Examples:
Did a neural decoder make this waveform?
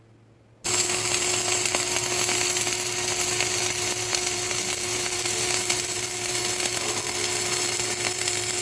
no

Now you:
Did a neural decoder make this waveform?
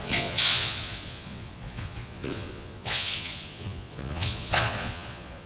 yes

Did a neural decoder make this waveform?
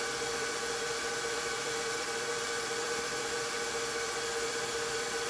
yes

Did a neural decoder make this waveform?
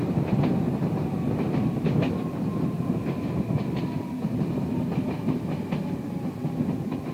no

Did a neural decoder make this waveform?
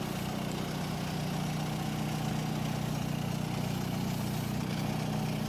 no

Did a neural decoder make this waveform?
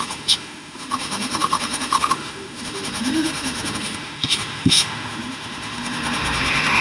yes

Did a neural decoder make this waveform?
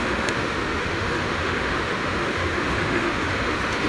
yes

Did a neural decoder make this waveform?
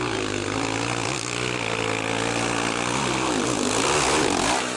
no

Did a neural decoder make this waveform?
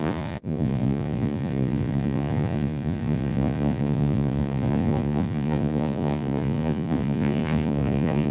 yes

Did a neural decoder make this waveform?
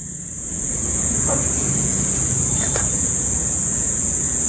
yes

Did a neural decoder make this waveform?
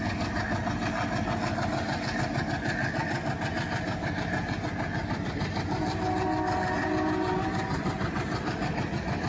no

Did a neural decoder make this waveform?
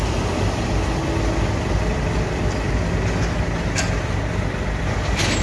no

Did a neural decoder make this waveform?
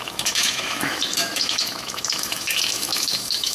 yes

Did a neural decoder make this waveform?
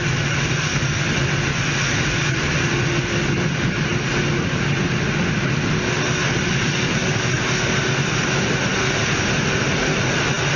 no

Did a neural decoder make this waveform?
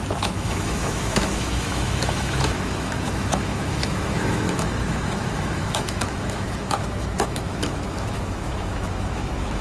yes